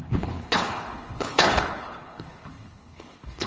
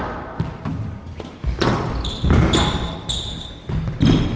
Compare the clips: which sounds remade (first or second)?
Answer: first